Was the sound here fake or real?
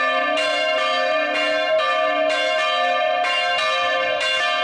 real